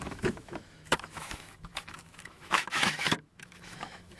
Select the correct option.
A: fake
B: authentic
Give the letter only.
A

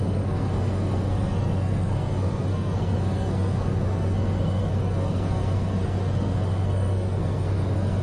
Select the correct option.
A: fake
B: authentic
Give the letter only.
A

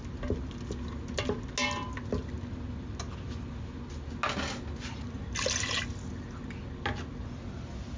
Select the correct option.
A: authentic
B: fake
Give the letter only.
A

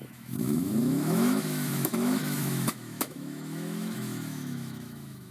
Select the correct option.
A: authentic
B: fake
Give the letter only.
B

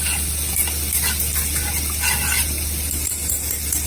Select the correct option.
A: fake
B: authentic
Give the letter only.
B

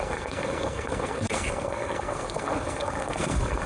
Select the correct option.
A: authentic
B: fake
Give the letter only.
B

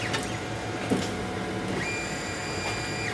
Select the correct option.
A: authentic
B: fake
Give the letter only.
A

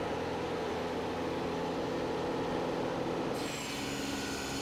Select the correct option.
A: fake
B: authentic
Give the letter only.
B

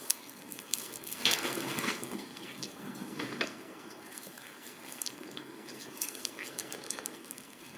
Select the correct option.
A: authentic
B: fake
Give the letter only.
B